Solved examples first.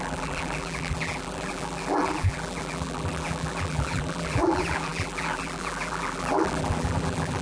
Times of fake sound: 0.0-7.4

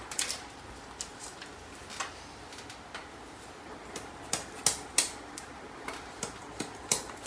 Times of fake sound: 1.1-1.8

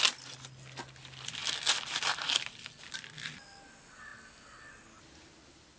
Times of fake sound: none